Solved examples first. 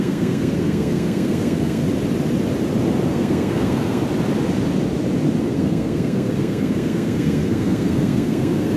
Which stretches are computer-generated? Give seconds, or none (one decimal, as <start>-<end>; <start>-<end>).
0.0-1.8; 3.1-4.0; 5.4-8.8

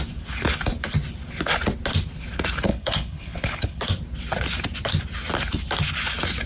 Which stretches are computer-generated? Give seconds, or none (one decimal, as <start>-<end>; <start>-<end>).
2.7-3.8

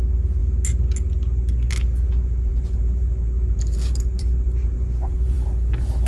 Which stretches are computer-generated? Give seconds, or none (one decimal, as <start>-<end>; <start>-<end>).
2.5-6.1

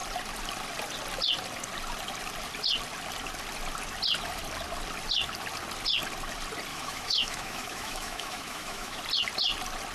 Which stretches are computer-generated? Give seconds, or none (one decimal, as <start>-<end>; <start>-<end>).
6.7-9.0

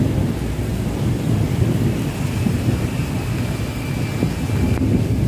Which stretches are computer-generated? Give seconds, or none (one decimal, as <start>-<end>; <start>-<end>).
none